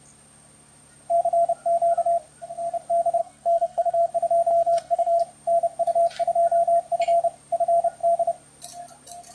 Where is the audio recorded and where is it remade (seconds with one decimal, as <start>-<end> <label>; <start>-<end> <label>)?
0.0-3.2 recorded; 3.2-4.1 remade; 4.1-4.5 recorded; 4.5-5.2 remade; 5.2-9.3 recorded